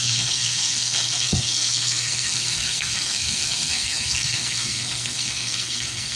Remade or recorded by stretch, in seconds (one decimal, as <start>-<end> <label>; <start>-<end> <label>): 0.0-6.2 remade